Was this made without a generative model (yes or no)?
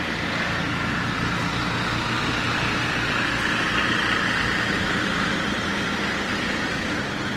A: yes